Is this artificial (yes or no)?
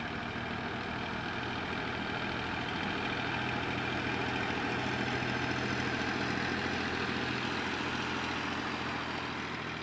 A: no